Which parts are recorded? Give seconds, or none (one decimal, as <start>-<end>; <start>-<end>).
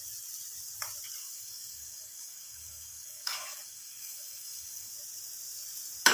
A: 0.0-1.2; 4.9-6.1